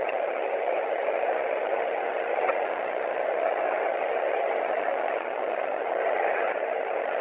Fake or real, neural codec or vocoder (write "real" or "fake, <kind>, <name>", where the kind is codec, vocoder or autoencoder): fake, vocoder, HiFi-GAN